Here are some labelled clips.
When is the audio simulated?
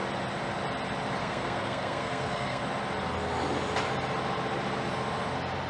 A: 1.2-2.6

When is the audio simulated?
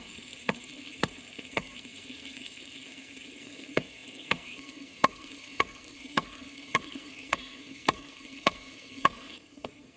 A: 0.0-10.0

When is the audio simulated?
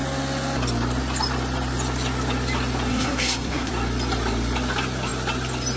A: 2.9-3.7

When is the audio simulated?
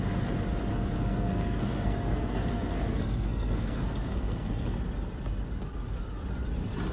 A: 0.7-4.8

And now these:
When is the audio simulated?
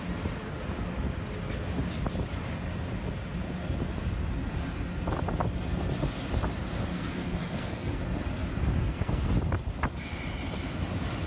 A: 6.9-8.0; 8.8-9.3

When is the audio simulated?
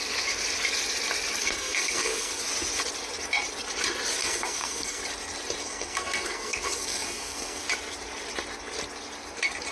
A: 1.4-2.4; 4.2-5.0; 5.6-7.6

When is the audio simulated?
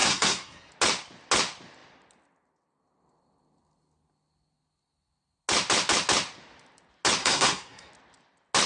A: 0.0-0.7; 7.2-7.9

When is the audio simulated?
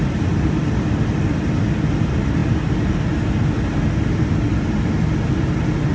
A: none